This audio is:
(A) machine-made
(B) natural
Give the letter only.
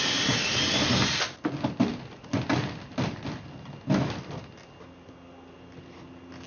B